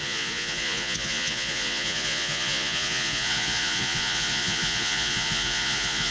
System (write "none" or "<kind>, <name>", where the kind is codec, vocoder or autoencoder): vocoder, Vocos